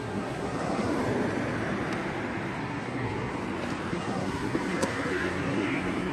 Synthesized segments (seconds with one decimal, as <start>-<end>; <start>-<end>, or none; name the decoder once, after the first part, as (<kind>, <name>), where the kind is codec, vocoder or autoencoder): 0.0-1.0 (codec, SNAC); 2.6-3.3; 3.9-6.1